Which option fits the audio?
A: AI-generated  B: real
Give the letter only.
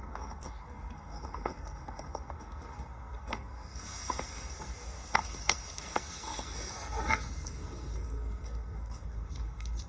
A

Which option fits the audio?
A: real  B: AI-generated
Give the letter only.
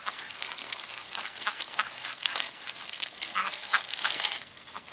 B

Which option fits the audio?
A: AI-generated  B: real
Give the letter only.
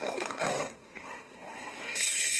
A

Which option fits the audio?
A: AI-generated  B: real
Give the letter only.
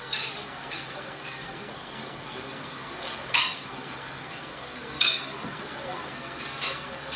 A